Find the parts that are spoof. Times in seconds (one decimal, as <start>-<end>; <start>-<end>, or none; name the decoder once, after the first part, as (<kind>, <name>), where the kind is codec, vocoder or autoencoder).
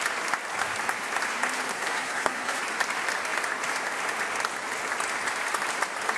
1.7-2.6 (codec, SNAC)